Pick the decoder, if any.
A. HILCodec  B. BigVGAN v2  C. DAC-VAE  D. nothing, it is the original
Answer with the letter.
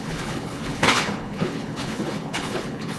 A